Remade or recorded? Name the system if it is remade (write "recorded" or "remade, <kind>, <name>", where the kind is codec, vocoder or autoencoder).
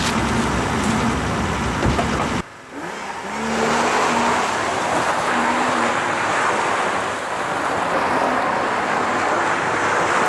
recorded